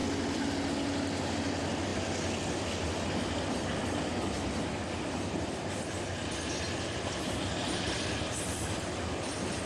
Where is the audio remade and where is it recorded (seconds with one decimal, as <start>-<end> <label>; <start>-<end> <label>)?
0.0-9.7 recorded